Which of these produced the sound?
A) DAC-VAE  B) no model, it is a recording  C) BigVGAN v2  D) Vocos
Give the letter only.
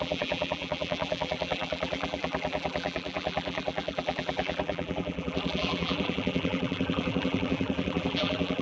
C